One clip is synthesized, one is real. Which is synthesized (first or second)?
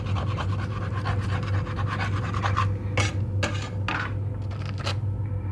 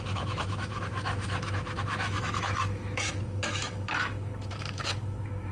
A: second